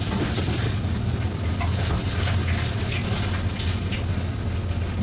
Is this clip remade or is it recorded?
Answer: recorded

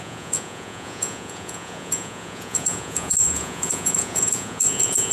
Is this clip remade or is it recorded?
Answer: remade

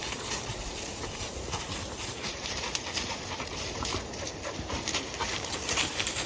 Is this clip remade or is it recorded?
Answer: remade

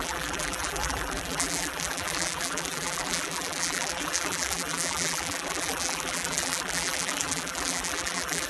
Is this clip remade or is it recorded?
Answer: remade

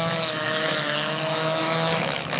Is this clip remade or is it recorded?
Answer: remade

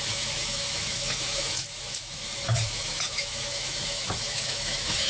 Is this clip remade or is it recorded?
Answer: remade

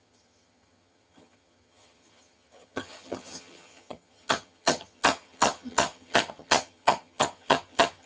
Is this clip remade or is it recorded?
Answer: remade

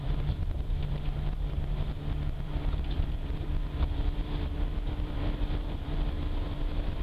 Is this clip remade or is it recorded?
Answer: remade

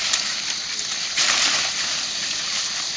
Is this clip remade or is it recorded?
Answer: recorded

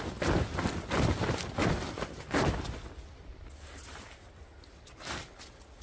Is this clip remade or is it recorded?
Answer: recorded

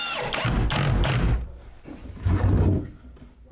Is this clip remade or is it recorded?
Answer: recorded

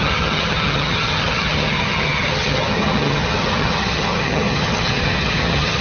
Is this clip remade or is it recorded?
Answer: remade